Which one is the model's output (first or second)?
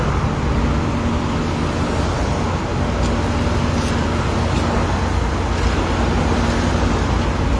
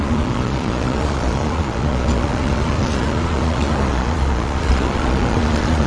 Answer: second